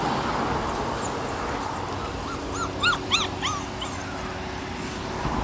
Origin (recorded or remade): recorded